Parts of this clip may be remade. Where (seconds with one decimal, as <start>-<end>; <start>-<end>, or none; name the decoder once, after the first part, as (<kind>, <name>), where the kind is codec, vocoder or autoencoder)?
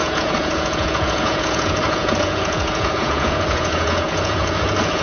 0.0-5.0 (vocoder, Vocos)